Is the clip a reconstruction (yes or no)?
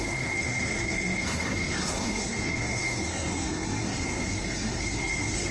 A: yes